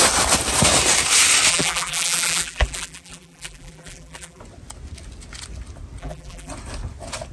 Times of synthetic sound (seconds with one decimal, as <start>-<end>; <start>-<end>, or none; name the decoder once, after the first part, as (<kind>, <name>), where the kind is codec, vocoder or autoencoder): 1.5-4.4 (vocoder, BigVGAN v2); 6.0-6.5